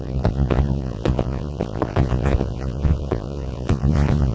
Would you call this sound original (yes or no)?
no